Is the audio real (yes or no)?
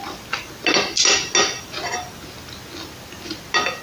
yes